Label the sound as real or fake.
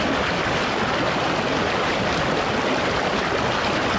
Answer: real